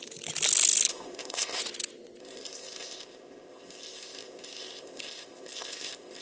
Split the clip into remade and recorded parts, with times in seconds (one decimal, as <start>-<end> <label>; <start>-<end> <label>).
0.0-0.9 recorded; 0.9-1.6 remade; 1.6-2.2 recorded; 2.2-6.2 remade